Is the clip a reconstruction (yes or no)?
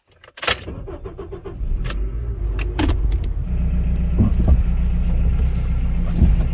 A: no